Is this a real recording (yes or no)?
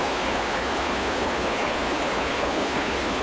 no